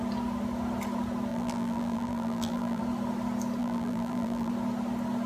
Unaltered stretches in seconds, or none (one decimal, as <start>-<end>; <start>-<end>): 0.0-1.3; 2.8-3.6; 4.5-5.3